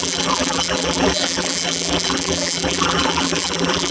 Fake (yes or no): yes